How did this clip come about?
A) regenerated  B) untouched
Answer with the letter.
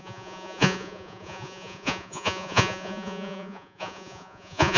A